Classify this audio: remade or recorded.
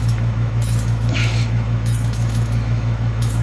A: remade